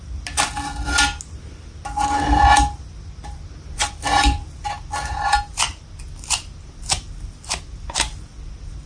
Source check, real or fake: real